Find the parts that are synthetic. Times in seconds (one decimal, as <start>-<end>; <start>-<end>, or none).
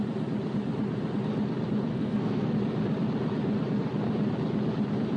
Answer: 1.9-2.5